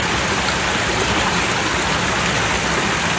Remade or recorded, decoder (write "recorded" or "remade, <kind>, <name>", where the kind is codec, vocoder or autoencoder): recorded